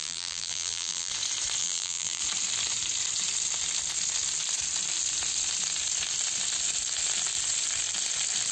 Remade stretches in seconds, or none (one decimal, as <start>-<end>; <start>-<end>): 0.0-1.1; 1.6-2.2